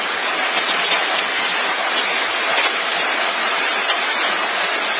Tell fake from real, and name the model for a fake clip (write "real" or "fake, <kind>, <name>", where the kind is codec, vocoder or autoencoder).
fake, vocoder, BigVGAN v2